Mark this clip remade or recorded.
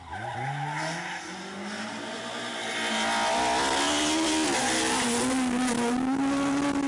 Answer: recorded